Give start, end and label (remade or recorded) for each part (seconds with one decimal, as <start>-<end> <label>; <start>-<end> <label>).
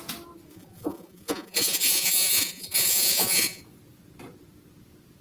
0.0-0.5 recorded; 0.5-3.6 remade; 3.6-5.2 recorded